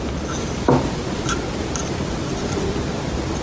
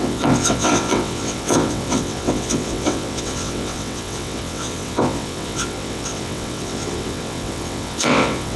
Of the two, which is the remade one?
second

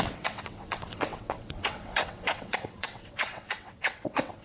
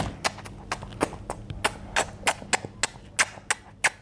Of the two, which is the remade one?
first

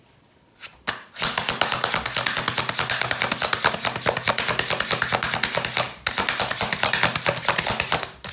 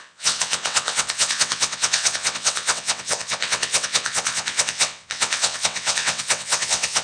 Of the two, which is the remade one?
second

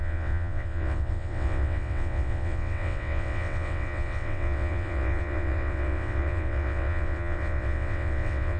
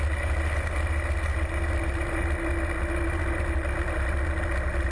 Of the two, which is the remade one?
first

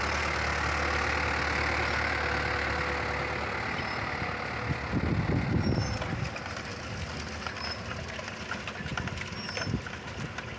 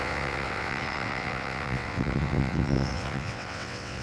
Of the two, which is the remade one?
second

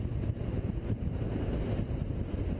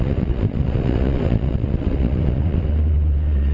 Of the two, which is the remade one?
second